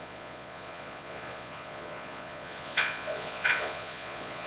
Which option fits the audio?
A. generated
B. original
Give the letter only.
A